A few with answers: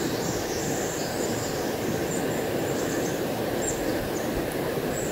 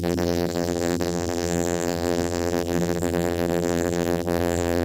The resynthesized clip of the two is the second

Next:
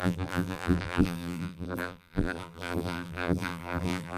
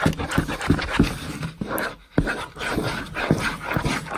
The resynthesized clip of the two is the first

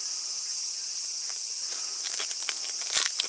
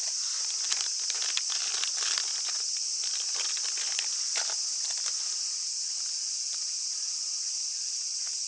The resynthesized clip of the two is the first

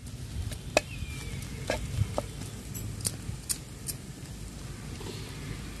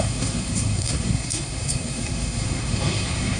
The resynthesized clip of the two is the second